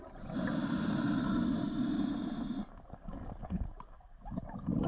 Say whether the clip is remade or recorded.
recorded